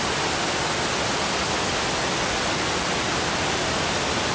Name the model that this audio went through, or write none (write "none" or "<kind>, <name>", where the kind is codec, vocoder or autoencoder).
none